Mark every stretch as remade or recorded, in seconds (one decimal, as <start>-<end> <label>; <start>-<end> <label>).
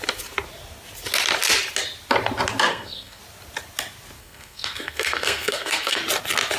0.0-2.7 recorded; 2.7-3.2 remade; 3.2-4.2 recorded; 4.2-6.0 remade; 6.0-6.6 recorded